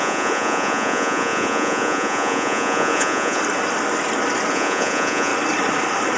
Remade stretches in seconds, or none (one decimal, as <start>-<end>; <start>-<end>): 0.0-3.4; 4.5-5.3